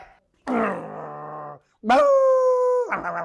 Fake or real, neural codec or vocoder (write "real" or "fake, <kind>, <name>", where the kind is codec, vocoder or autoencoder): real